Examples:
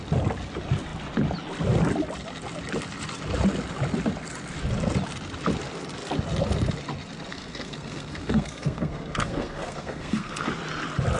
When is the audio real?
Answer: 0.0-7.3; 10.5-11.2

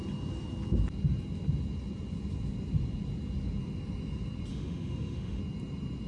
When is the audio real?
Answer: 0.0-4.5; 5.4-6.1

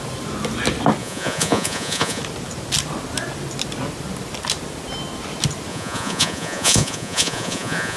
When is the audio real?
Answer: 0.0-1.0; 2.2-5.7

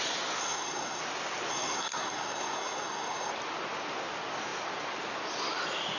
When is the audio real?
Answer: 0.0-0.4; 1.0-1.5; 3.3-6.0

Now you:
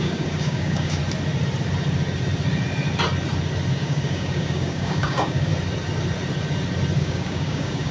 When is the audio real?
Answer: 1.0-3.7; 5.5-7.0